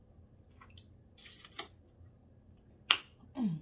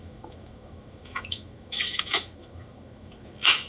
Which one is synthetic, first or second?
second